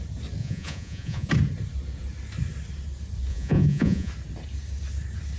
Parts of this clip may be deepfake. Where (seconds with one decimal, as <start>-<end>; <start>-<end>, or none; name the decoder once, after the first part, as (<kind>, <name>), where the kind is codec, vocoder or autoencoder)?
0.4-1.3 (vocoder, Vocos); 3.3-4.1